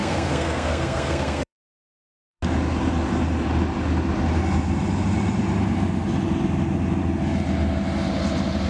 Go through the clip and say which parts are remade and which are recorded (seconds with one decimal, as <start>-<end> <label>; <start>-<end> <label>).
0.0-2.4 remade; 2.4-8.7 recorded